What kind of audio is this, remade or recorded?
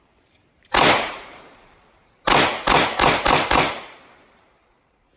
remade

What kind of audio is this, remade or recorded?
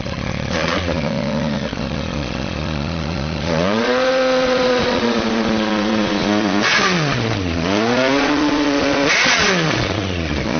remade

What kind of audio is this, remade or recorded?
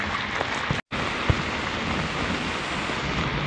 recorded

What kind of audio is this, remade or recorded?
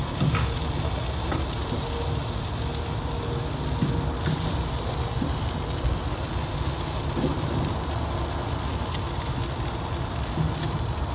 recorded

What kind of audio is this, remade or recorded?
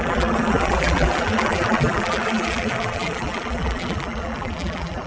remade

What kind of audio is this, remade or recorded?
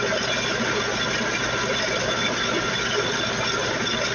recorded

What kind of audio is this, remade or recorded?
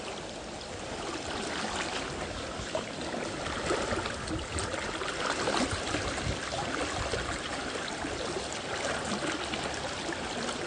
recorded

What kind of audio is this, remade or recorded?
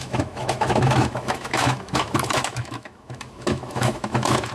remade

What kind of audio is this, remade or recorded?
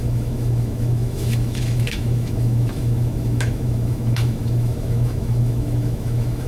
remade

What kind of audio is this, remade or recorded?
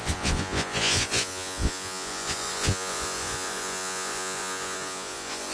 remade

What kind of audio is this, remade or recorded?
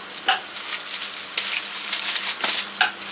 recorded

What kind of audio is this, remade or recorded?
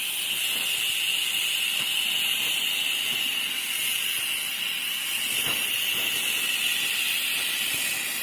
recorded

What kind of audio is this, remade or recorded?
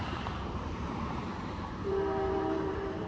remade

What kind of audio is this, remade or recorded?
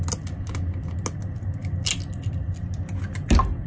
recorded